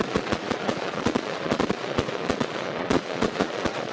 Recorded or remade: remade